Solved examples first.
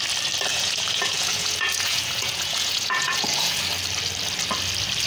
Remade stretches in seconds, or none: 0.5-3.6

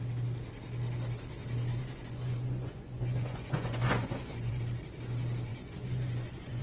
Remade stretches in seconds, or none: 1.7-4.6; 5.5-6.6

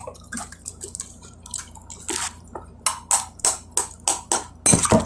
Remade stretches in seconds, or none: none

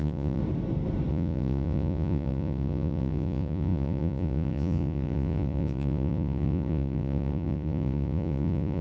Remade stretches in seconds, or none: 0.0-0.4; 1.1-8.8

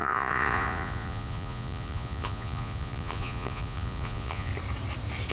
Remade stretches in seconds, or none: 0.0-4.5

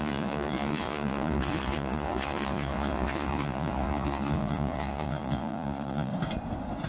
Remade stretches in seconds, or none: 0.0-6.1

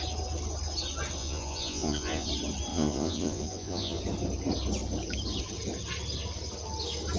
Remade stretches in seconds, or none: 1.2-2.3; 2.7-4.0

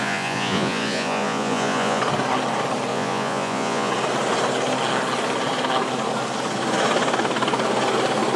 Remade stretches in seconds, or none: 0.0-2.0; 2.9-3.9